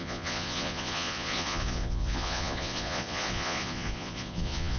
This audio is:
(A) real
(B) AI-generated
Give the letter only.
B